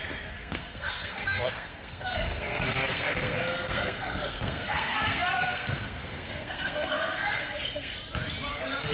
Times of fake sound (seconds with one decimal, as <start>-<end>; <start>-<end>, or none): 0.0-7.9; 8.5-8.9